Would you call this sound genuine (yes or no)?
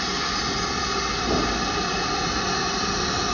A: yes